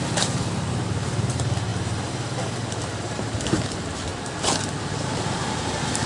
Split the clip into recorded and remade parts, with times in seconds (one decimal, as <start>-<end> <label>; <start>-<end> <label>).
0.0-1.7 remade; 1.7-2.7 recorded; 2.7-4.1 remade; 4.1-4.8 recorded; 4.8-6.1 remade